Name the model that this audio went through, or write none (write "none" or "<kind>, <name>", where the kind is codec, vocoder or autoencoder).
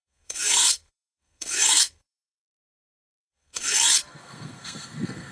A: codec, SNAC